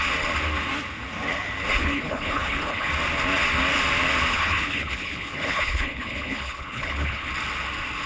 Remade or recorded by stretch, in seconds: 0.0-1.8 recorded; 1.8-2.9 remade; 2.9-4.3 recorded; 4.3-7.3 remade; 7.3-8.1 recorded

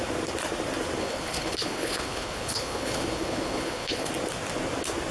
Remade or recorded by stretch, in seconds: 0.0-1.0 recorded; 1.0-4.1 remade; 4.1-5.1 recorded